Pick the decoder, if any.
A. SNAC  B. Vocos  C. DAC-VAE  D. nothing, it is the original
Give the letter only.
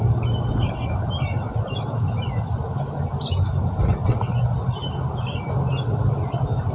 D